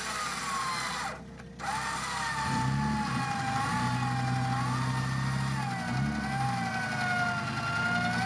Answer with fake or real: real